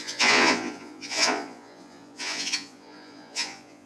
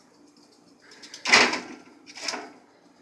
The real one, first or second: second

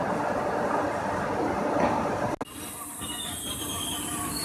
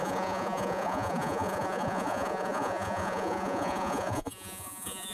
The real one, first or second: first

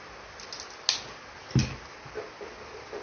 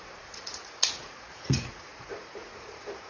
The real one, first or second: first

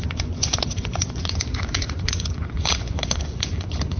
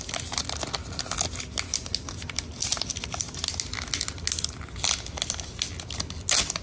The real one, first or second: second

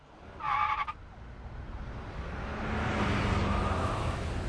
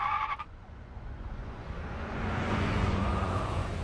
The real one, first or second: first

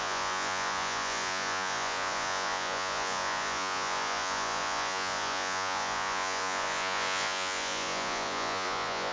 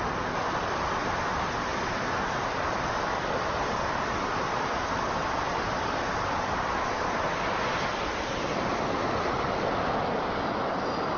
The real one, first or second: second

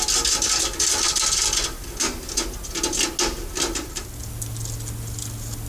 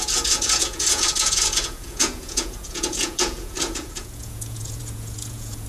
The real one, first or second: first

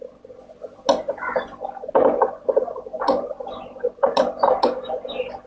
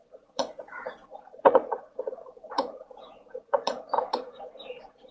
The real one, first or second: first